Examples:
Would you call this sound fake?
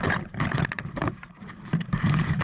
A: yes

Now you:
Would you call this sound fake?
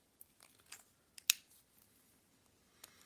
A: no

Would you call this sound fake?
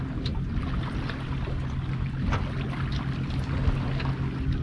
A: no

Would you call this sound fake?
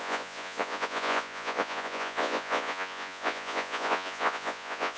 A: yes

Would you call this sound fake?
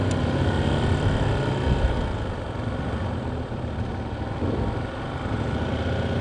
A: no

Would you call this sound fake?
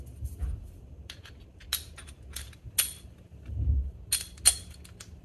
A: no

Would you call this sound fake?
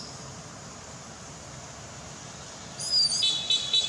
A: no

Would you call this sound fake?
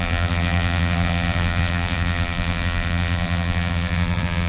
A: yes